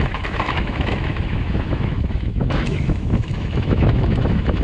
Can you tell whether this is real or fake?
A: fake